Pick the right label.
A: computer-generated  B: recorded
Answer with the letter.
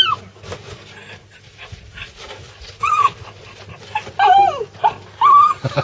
B